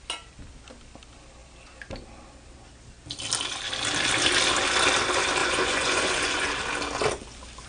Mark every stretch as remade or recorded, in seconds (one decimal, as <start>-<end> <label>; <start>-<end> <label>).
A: 0.0-5.4 recorded; 5.4-6.5 remade; 6.5-7.7 recorded